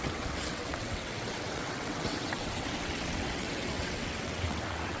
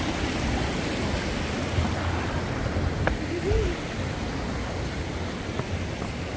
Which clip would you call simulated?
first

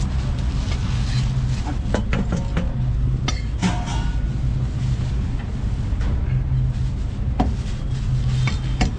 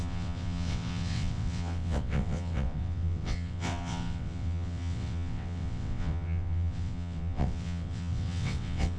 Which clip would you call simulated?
second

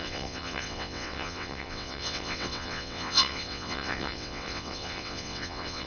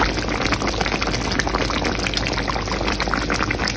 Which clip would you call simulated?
first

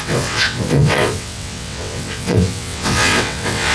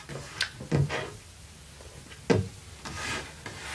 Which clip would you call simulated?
first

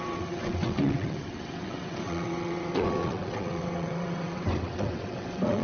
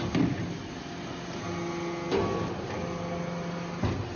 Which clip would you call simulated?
first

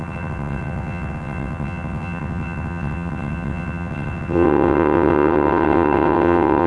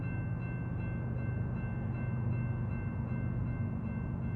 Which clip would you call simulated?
first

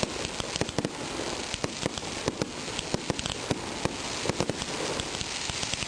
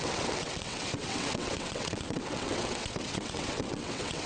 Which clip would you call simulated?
second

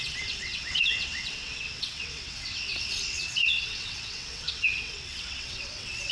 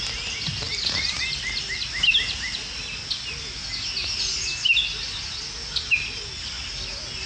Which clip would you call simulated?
first